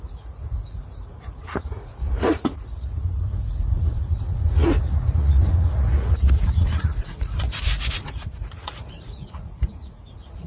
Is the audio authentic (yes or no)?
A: no